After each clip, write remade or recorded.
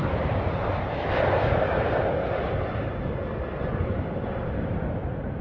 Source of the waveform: recorded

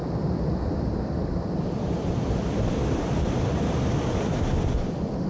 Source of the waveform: recorded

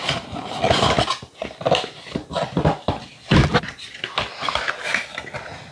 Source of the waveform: recorded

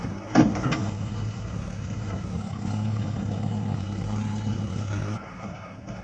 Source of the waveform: remade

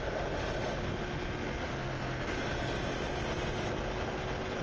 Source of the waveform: recorded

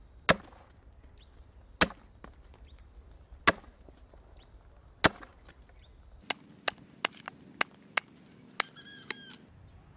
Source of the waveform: recorded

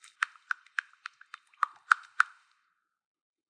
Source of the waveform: recorded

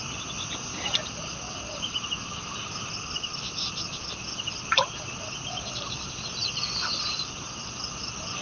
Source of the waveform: recorded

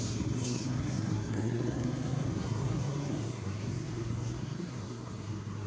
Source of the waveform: remade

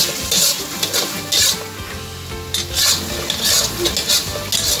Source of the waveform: recorded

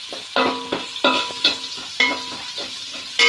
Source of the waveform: recorded